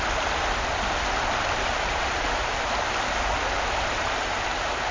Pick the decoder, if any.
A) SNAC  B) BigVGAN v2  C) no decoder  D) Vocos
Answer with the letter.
C